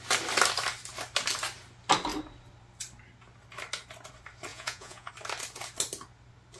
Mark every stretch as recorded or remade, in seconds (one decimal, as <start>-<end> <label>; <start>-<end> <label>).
0.0-4.5 recorded; 4.5-5.1 remade; 5.1-6.6 recorded